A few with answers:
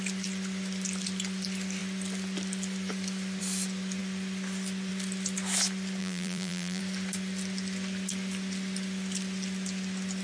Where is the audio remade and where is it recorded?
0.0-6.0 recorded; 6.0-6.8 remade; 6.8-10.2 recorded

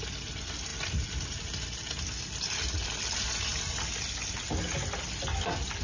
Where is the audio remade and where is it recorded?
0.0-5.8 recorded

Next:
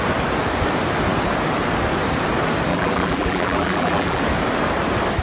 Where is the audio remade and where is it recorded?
0.0-2.7 recorded; 2.7-4.2 remade; 4.2-5.2 recorded

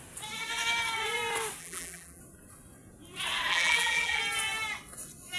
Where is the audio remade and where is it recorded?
0.0-1.6 recorded; 1.6-2.2 remade; 2.2-3.5 recorded; 3.5-4.2 remade; 4.2-5.4 recorded